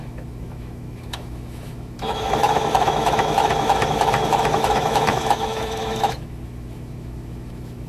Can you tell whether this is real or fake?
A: fake